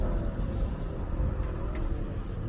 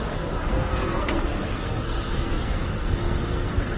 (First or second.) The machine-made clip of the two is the second